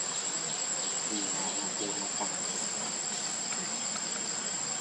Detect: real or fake real